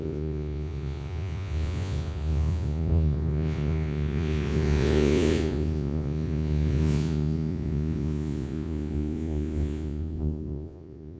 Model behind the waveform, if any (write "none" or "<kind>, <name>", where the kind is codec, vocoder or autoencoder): vocoder, Vocos